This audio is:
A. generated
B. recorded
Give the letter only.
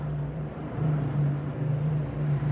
A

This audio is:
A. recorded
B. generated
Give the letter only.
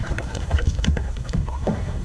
B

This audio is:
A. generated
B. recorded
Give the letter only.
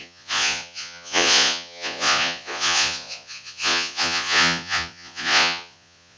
A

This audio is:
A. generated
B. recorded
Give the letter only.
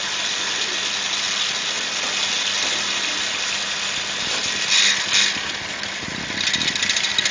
B